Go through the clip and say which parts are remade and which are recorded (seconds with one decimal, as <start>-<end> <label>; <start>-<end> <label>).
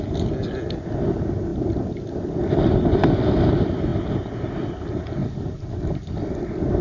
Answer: 0.0-6.8 recorded